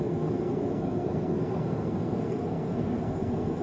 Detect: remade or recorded remade